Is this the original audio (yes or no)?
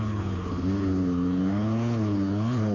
no